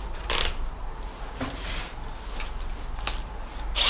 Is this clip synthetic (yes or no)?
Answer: no